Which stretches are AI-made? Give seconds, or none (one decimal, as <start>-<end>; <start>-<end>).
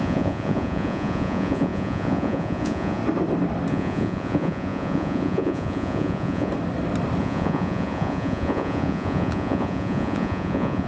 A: 0.0-3.0; 3.7-6.5; 7.2-10.9